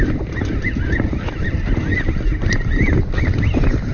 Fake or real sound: real